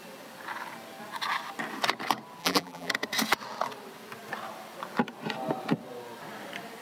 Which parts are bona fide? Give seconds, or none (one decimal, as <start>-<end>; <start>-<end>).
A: 0.0-2.4; 2.9-6.8